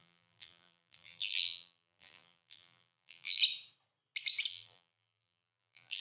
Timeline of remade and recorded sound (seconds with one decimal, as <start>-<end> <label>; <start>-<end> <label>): 0.0-3.4 remade; 3.4-4.5 recorded; 4.5-6.0 remade